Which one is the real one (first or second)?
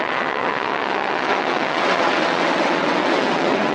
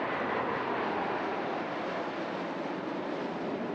second